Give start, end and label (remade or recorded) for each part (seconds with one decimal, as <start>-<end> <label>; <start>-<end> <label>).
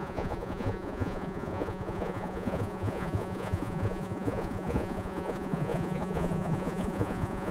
0.0-7.5 remade